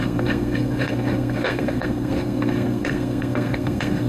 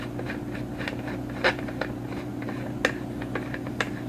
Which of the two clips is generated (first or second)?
first